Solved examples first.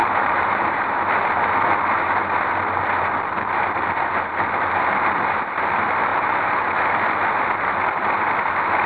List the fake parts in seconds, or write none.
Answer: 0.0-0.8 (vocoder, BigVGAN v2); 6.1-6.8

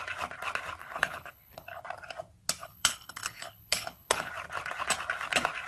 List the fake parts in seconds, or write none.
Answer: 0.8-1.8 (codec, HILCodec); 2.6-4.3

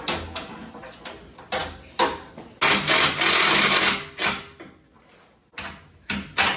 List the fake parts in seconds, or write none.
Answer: none